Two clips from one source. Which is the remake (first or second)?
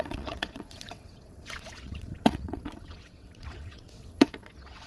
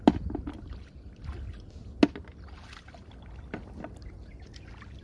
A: first